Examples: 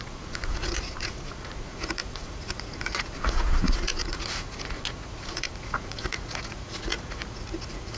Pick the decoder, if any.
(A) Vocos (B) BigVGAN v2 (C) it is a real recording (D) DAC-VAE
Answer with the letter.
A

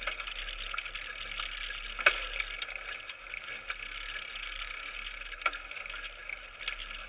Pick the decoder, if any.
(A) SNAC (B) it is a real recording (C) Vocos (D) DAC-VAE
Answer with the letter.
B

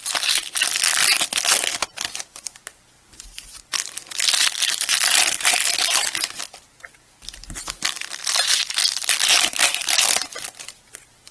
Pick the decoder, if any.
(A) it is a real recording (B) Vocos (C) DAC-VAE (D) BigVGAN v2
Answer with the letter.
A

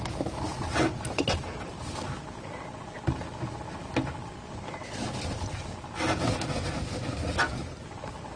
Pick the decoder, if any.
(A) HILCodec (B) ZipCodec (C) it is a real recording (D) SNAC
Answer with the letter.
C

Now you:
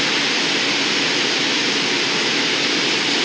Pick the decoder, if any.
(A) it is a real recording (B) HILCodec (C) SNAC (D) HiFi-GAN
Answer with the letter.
A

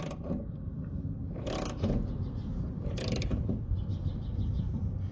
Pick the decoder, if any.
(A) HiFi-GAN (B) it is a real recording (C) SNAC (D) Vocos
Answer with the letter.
B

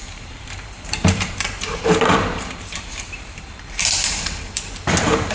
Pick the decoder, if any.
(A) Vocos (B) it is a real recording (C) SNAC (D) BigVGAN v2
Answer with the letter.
D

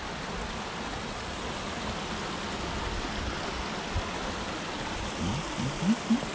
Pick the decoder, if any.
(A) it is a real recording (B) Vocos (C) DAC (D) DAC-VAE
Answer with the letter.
A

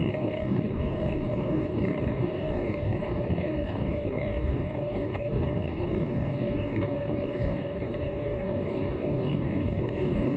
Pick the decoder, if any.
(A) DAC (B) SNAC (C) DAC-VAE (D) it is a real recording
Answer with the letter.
A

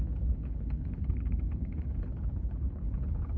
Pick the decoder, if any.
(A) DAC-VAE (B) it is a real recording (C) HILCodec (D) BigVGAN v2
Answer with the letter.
C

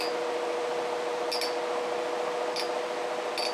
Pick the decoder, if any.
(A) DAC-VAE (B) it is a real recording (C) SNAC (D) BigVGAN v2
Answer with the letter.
B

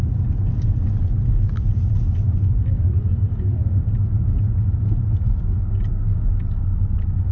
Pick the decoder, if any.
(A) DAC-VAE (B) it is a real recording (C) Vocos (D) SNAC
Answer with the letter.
B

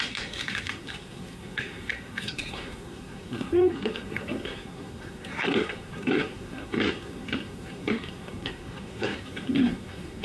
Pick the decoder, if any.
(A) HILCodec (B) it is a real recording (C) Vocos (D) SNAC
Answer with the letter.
D